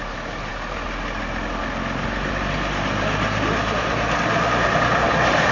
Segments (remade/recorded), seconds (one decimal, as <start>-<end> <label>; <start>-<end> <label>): 0.0-5.5 recorded